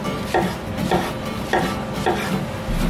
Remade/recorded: recorded